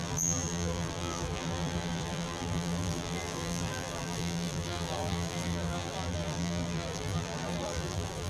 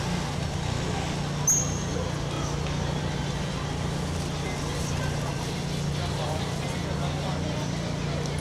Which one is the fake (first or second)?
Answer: first